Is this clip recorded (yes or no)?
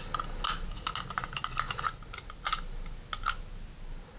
yes